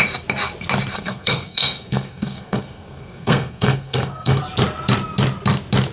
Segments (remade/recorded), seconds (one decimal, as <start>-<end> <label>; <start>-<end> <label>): 0.0-0.9 recorded; 0.9-4.4 remade; 4.4-5.9 recorded